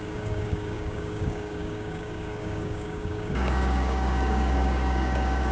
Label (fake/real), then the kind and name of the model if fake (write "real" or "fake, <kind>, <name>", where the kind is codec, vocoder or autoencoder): fake, codec, DAC